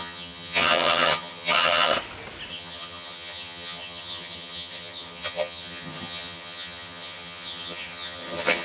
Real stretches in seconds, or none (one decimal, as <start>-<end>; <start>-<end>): 1.9-2.5